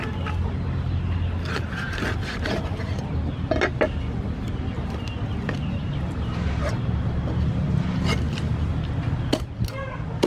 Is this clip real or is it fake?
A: real